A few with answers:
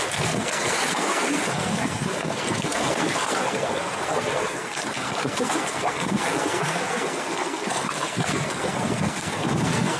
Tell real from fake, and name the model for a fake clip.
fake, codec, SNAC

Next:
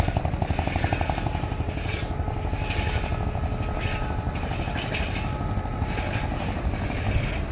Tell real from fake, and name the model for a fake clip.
real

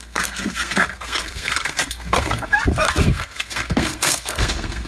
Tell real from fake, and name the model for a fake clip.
fake, codec, SNAC